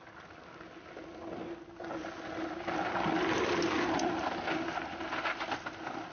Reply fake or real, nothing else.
real